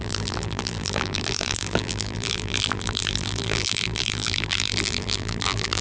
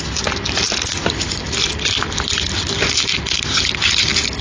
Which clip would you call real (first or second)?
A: second